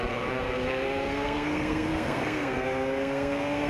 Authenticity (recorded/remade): remade